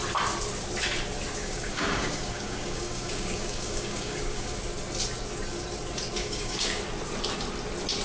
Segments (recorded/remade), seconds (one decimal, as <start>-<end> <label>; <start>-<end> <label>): 0.0-1.4 recorded; 1.4-4.6 remade; 4.6-6.2 recorded; 6.2-6.8 remade; 6.8-8.0 recorded